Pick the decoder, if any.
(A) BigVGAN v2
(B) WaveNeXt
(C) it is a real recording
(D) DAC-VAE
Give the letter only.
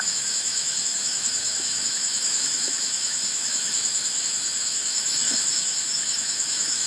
D